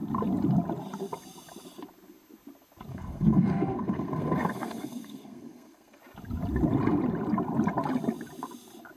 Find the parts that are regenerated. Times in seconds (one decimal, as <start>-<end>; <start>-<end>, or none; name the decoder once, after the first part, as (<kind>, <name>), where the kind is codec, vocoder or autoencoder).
2.9-6.0 (codec, SNAC)